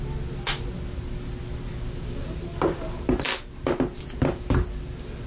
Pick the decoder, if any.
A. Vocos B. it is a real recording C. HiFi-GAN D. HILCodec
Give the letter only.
B